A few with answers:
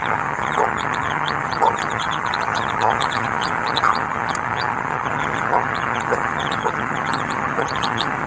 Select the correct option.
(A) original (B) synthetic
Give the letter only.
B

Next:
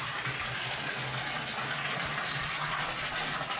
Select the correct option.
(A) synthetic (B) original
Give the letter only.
B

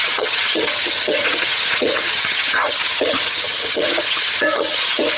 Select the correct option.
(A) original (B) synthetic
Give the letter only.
B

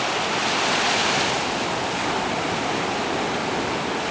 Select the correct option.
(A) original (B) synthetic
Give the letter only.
A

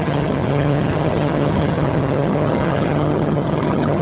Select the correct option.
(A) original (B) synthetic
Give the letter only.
B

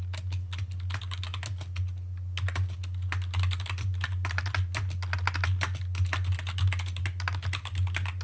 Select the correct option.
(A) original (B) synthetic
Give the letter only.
A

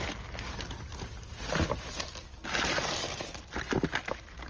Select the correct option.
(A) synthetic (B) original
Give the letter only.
B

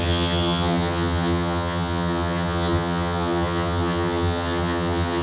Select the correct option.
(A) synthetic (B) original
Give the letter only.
A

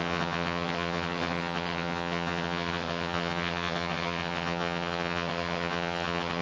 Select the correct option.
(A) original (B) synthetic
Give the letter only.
B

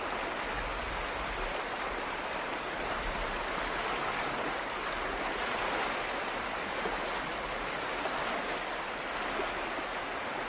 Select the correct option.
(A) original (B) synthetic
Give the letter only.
A